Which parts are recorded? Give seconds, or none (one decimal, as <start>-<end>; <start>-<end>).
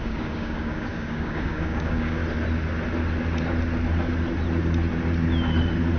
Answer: 2.2-6.0